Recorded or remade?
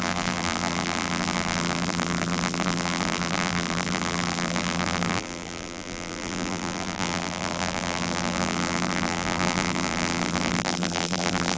remade